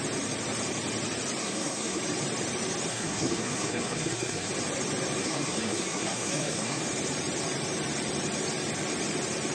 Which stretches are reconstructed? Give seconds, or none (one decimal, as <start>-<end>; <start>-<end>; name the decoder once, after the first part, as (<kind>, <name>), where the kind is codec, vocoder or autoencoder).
1.4-2.0 (codec, SNAC); 2.9-4.5; 5.2-6.8